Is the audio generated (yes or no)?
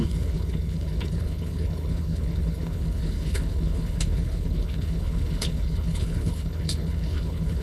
yes